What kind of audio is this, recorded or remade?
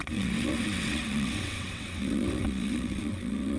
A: remade